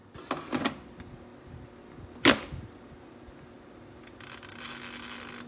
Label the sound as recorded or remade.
recorded